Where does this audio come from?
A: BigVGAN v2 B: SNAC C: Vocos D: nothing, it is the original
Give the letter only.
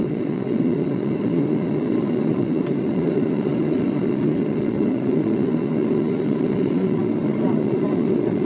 C